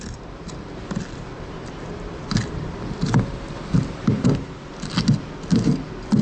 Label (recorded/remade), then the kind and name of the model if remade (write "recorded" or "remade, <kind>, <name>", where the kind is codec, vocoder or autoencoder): recorded